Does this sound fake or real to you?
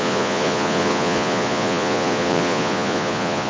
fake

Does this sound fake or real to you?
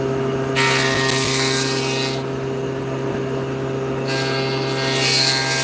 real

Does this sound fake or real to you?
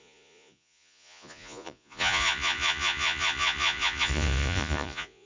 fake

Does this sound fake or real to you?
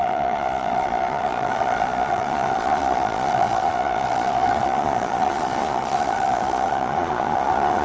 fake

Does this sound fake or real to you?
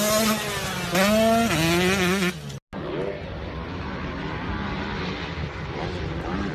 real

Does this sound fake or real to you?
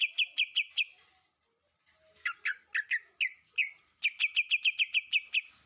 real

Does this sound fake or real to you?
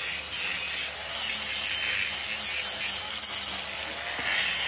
real